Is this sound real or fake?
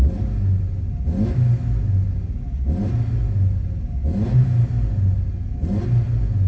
real